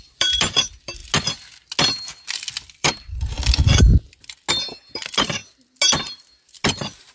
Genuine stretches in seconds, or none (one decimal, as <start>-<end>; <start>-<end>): 1.0-2.6; 3.9-4.5; 5.4-7.1